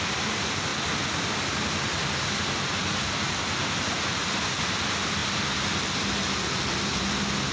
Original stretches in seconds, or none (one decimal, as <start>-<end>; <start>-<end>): 0.0-7.5